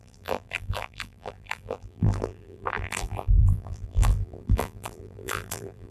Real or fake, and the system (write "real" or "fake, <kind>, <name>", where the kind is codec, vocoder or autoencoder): fake, vocoder, BigVGAN v2